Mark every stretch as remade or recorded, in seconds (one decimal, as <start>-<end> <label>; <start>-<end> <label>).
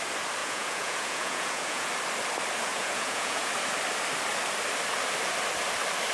0.0-0.4 recorded; 0.4-1.9 remade; 1.9-2.7 recorded; 2.7-3.5 remade; 3.5-6.1 recorded